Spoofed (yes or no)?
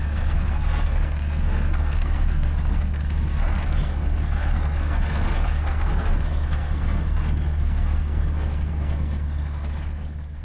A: yes